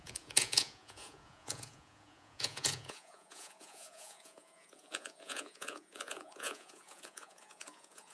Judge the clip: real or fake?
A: fake